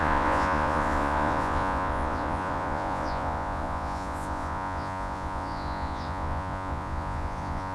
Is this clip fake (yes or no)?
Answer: yes